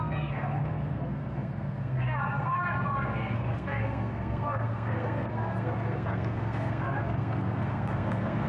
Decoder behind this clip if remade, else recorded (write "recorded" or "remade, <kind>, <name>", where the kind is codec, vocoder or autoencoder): remade, codec, SNAC